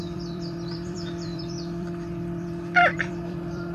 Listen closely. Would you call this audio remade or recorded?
remade